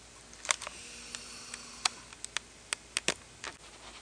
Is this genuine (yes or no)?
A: yes